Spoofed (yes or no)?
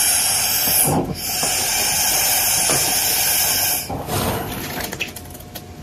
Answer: no